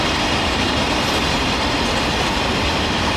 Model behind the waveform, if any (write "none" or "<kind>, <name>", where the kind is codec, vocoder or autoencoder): vocoder, BigVGAN v2